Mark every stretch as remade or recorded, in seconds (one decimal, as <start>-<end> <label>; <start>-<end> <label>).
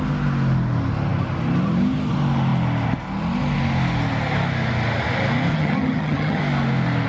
0.0-5.5 recorded; 5.5-6.4 remade; 6.4-7.1 recorded